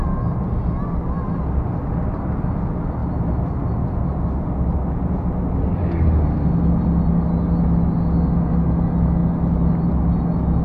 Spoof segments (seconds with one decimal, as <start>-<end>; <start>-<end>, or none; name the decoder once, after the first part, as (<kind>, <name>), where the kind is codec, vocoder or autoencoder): none